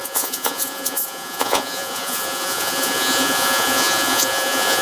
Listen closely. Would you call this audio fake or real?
fake